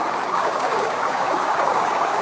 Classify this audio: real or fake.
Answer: fake